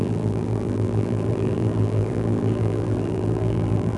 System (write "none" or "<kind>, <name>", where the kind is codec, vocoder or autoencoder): vocoder, BigVGAN v2